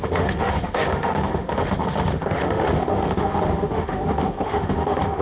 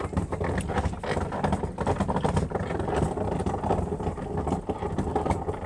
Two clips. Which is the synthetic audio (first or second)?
first